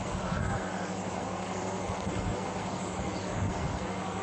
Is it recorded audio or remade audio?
remade